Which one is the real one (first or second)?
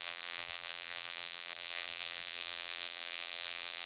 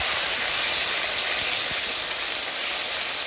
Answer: second